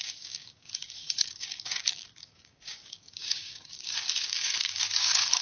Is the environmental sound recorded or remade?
remade